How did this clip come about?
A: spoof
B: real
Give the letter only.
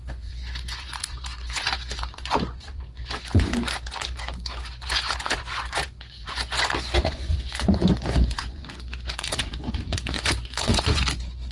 A